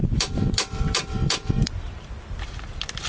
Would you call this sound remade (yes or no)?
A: yes